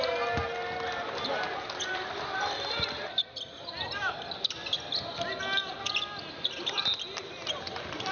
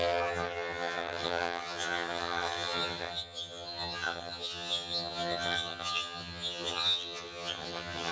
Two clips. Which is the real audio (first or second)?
first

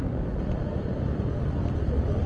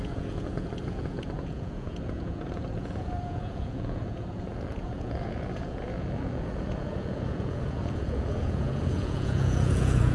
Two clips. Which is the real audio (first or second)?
first